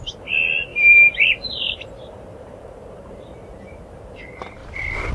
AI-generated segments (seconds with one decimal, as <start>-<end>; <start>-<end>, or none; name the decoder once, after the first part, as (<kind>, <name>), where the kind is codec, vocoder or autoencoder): 0.7-3.8 (vocoder, BigVGAN v2); 4.6-5.1

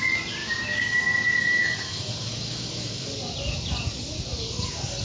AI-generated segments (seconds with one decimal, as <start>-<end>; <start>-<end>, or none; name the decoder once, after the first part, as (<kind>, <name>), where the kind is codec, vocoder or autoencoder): 0.4-1.0 (codec, DAC)

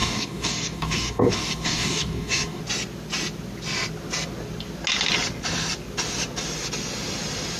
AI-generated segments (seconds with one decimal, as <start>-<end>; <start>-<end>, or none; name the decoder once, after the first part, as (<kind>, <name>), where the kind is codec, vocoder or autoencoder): 0.0-2.6 (codec, DAC)

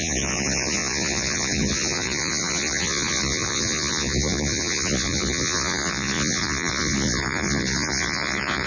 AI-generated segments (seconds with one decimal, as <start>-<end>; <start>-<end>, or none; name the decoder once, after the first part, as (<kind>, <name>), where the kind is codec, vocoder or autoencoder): 0.0-8.7 (vocoder, Vocos)

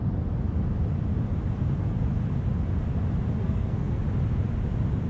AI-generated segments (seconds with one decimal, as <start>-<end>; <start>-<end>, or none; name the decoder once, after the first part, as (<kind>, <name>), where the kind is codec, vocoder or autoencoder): 3.4-4.0 (codec, SNAC)

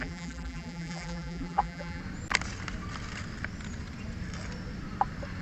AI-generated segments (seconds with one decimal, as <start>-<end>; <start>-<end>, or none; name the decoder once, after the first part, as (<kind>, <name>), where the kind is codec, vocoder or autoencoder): 0.0-2.0 (vocoder, BigVGAN v2)

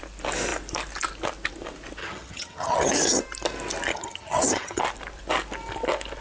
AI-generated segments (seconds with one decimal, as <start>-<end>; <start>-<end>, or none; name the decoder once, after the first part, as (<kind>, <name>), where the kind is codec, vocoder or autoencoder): 2.0-3.2 (vocoder, HiFi-GAN); 3.9-4.8

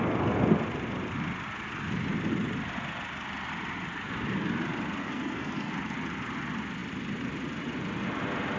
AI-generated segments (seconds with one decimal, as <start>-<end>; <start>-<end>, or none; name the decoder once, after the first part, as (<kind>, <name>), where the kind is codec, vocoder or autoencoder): 5.0-5.7 (codec, SNAC)